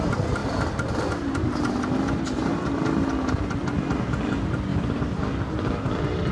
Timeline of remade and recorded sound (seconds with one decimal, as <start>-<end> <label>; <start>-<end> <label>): 0.0-4.7 recorded; 4.7-5.2 remade; 5.2-6.3 recorded

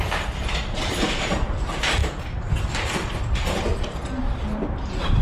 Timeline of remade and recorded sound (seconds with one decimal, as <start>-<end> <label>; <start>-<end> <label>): 0.0-2.0 remade; 2.0-2.6 recorded; 2.6-3.7 remade; 3.7-4.3 recorded; 4.3-5.2 remade

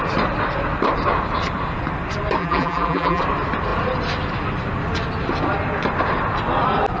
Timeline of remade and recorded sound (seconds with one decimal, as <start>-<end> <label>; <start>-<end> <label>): 0.0-2.4 recorded; 2.4-3.2 remade; 3.2-7.0 recorded

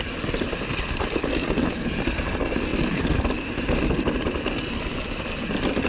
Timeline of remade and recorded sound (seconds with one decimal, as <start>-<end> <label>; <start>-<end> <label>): 0.0-2.7 recorded; 2.7-5.0 remade; 5.0-5.9 recorded